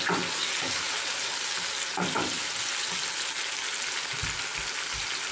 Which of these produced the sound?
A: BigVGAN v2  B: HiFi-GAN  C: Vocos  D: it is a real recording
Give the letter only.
D